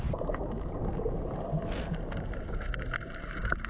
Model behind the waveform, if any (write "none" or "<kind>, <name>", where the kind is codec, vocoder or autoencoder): none